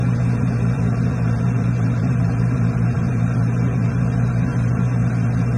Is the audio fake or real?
fake